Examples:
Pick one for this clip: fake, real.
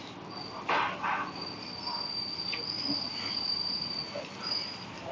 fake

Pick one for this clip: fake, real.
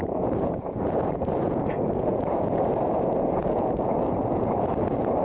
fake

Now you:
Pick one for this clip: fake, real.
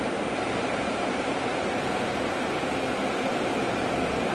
real